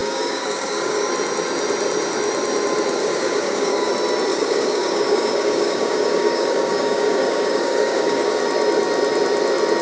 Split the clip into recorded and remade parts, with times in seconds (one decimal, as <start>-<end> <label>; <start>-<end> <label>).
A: 0.0-1.1 remade; 1.1-3.0 recorded; 3.0-3.9 remade; 3.9-4.3 recorded; 4.3-8.4 remade; 8.4-9.8 recorded